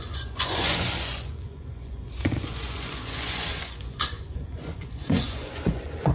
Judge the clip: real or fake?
fake